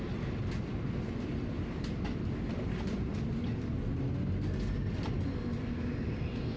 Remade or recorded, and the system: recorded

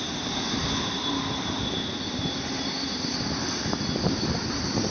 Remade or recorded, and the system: remade, vocoder, BigVGAN v2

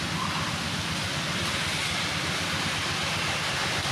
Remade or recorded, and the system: recorded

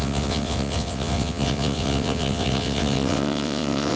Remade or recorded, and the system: remade, vocoder, WaveNeXt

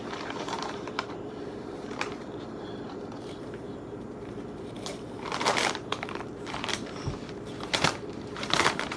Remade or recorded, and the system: remade, vocoder, BigVGAN v2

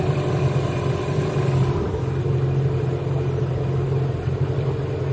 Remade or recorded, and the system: recorded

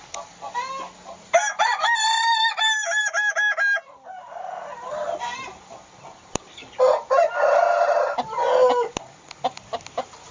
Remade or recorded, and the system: recorded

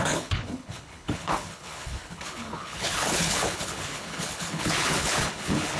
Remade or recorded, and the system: remade, codec, HILCodec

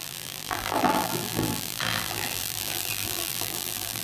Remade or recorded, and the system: remade, vocoder, BigVGAN v2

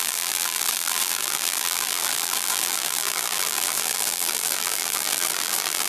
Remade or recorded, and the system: remade, vocoder, BigVGAN v2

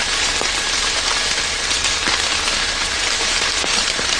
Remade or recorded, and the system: remade, vocoder, BigVGAN v2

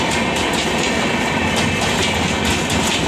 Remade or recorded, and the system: recorded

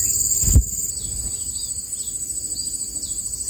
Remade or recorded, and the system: recorded